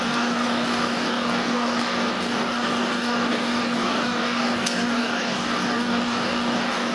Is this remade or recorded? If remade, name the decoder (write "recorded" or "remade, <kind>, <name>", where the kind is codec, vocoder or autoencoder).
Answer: remade, codec, DAC